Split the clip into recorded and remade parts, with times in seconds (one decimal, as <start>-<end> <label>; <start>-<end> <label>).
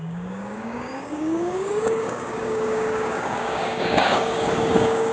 0.0-5.1 remade